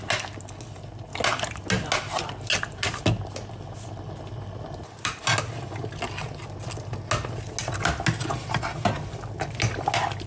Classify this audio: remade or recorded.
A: recorded